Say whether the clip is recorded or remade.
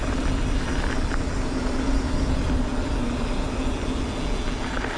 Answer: recorded